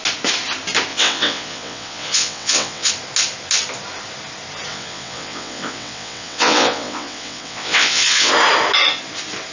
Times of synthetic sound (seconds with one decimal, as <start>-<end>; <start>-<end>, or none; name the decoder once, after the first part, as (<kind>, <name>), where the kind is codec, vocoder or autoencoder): 0.9-2.9 (vocoder, WaveNeXt); 4.7-8.3